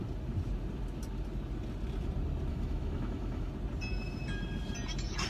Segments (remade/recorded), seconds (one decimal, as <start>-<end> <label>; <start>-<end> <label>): 0.0-2.5 recorded; 2.5-3.5 remade; 3.5-5.3 recorded